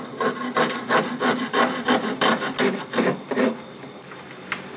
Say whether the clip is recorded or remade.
recorded